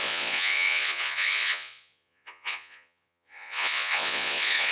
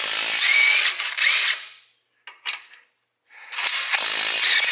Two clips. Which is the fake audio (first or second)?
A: first